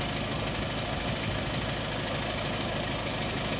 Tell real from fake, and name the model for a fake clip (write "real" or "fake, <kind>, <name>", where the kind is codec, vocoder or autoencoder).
real